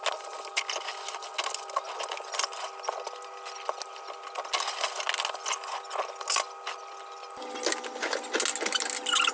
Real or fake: real